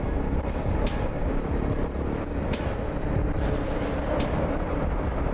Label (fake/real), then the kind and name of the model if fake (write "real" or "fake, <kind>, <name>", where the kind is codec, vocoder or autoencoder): fake, vocoder, BigVGAN v2